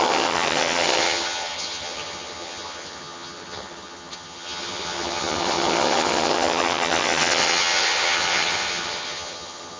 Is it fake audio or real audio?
fake